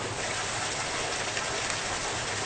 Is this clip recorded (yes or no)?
yes